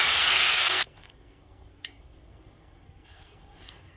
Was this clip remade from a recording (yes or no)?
yes